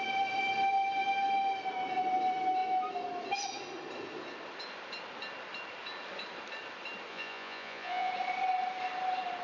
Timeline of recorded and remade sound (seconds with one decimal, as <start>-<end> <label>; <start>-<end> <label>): 0.0-7.1 recorded; 7.1-8.1 remade; 8.1-9.4 recorded